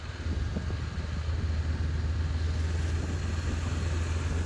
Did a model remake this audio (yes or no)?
no